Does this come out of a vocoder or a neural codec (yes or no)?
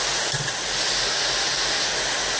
no